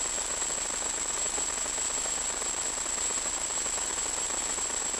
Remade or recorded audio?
remade